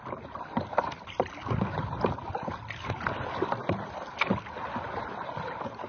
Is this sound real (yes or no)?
yes